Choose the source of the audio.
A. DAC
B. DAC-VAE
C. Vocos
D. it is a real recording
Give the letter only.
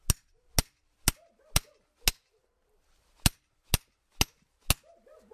D